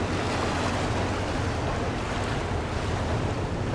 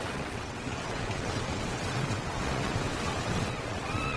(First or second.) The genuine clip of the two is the first